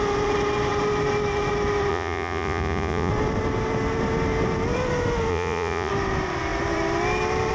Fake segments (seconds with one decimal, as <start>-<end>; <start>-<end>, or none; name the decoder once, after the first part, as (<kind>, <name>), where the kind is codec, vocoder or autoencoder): 1.9-3.1 (vocoder, Vocos); 5.3-5.9